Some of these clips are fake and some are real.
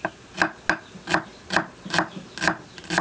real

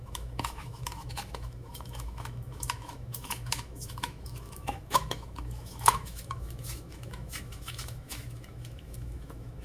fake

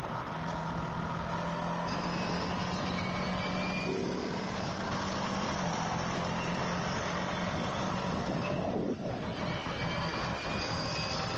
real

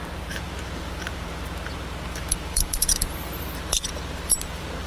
fake